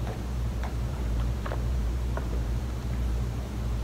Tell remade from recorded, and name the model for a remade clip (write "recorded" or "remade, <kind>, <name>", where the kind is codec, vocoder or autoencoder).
remade, vocoder, BigVGAN v2